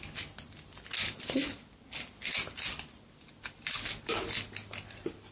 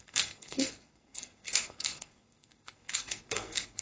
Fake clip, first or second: second